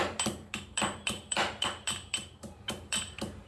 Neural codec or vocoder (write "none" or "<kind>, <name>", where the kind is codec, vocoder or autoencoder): vocoder, BigVGAN v2